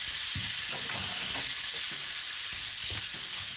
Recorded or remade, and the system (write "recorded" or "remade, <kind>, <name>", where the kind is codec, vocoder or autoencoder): recorded